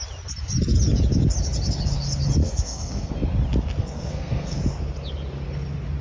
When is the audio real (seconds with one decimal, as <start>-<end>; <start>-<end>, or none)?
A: 0.0-2.4; 3.1-3.8; 4.6-6.0